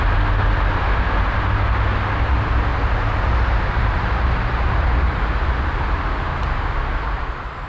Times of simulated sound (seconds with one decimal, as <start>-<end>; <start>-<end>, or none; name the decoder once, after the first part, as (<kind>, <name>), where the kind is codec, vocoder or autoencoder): 2.7-7.2 (vocoder, BigVGAN v2)